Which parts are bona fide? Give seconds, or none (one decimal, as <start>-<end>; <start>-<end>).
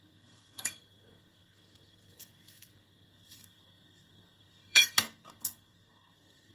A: none